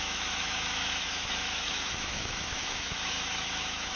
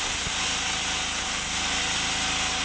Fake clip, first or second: first